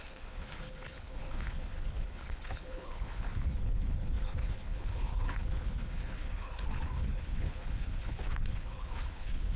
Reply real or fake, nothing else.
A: fake